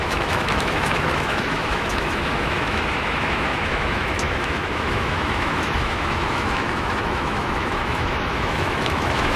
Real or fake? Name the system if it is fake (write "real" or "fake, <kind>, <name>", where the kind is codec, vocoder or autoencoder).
fake, autoencoder, DAC-VAE